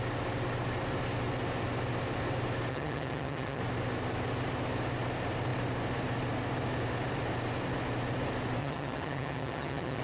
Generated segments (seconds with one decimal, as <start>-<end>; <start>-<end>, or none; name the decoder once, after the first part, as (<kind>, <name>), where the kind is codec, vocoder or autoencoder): 2.7-3.6 (vocoder, HiFi-GAN); 8.6-10.0